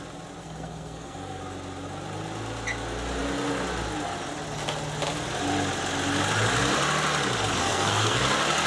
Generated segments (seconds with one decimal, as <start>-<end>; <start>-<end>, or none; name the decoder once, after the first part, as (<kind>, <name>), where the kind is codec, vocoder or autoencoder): 0.4-1.4 (codec, SNAC); 7.6-8.2